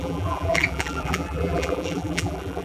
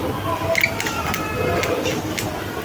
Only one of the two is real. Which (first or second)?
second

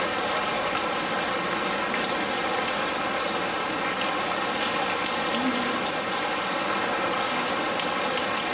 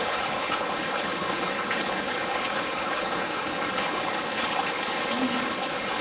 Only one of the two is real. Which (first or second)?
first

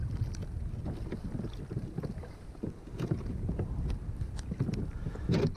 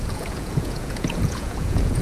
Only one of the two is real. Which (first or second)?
first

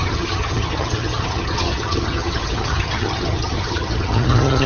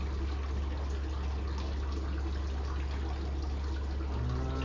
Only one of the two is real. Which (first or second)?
second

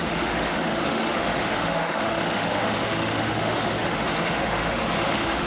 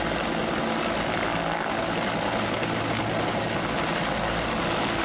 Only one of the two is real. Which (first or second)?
second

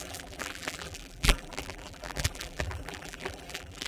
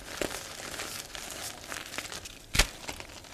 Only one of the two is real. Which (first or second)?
second